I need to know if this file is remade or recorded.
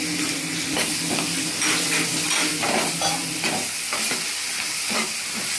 recorded